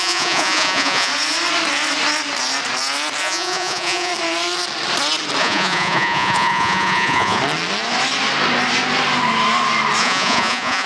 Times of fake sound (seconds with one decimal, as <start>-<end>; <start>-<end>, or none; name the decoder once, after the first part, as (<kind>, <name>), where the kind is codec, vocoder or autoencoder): 0.0-1.1 (vocoder, Vocos); 3.2-4.1; 5.4-7.4; 10.0-10.9